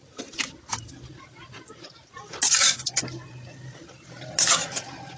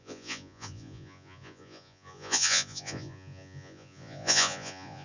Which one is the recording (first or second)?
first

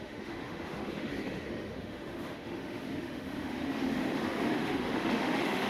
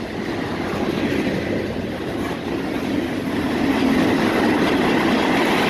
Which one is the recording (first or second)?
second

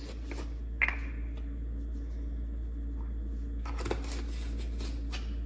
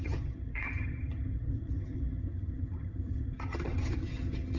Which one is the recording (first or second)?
first